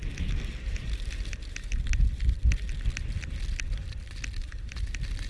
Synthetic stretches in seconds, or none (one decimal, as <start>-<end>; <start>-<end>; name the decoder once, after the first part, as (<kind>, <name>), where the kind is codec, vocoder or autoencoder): none